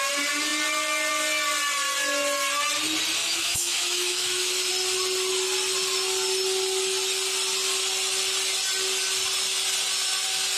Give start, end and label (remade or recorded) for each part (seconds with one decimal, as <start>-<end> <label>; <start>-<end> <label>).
0.0-3.2 recorded; 3.2-4.7 remade; 4.7-10.6 recorded